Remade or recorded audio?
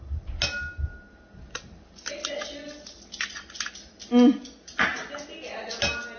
recorded